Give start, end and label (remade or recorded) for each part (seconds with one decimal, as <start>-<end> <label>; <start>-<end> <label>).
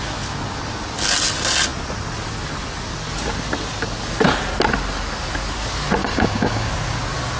0.0-6.0 recorded; 6.0-6.7 remade; 6.7-7.4 recorded